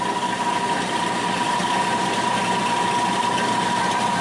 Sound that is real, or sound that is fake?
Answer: fake